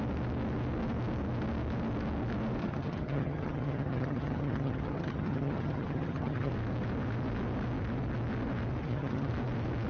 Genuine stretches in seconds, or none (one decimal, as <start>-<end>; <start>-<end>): 0.0-2.6; 6.5-8.8; 9.3-9.9